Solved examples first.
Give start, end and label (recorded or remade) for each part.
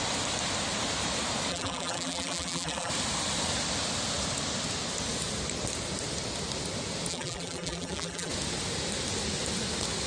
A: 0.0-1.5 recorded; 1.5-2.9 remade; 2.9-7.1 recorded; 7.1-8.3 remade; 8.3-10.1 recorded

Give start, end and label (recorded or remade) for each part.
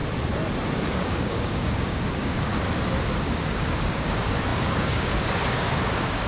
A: 0.0-0.9 recorded; 0.9-2.5 remade; 2.5-3.1 recorded; 3.1-6.3 remade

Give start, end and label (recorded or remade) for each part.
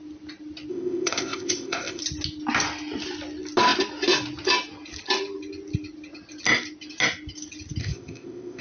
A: 0.0-0.7 recorded; 0.7-2.0 remade; 2.0-7.8 recorded; 7.8-8.6 remade